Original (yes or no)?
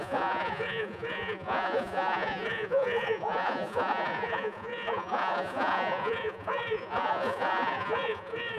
no